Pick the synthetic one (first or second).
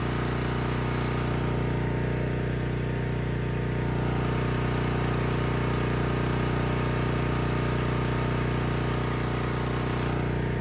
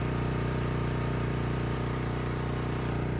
second